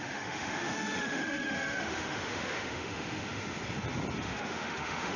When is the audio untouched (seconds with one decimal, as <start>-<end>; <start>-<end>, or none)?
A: 3.6-4.2